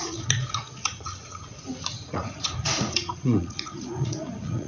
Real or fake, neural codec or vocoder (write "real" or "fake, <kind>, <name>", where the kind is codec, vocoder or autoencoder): fake, vocoder, Vocos